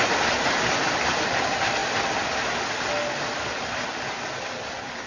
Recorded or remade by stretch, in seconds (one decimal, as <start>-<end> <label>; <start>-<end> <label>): 0.0-5.1 recorded